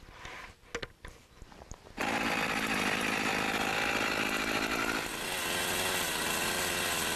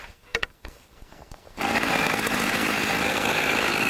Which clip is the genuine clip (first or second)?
first